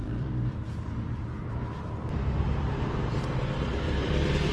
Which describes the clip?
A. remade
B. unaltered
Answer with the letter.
A